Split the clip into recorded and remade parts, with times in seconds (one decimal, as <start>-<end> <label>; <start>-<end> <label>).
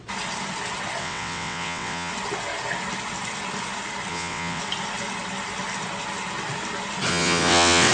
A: 0.0-1.0 recorded; 1.0-2.1 remade; 2.1-4.1 recorded; 4.1-4.6 remade; 4.6-7.1 recorded; 7.1-7.9 remade